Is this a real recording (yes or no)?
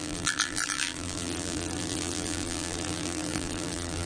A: no